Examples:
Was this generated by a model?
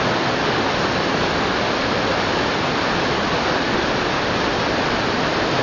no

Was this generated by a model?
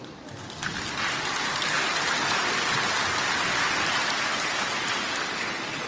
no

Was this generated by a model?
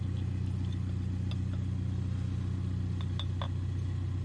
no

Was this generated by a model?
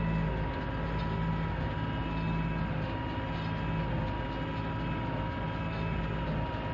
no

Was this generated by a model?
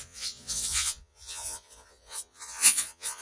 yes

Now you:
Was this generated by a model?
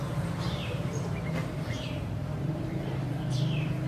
yes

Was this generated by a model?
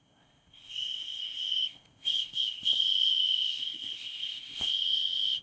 yes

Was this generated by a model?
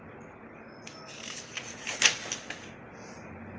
no